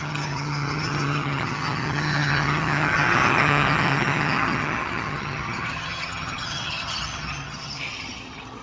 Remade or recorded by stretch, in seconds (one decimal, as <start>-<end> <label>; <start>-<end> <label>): 0.0-8.6 remade